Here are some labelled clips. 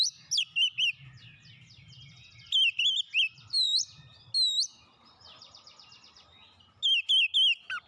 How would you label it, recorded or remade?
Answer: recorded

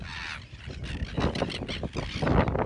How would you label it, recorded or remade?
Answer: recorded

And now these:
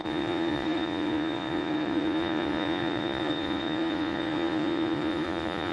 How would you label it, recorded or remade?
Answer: remade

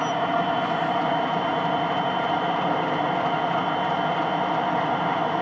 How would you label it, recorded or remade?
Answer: recorded